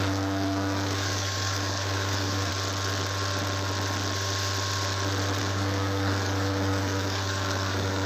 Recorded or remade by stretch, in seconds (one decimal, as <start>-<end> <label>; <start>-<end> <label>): 0.0-2.5 remade; 2.5-5.4 recorded; 5.4-8.1 remade